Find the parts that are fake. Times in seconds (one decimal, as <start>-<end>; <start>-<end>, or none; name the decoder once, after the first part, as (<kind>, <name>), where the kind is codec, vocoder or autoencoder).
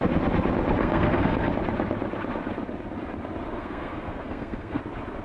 0.8-1.5 (codec, SNAC); 3.6-4.8